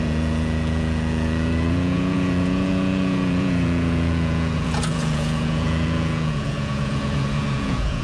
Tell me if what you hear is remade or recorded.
remade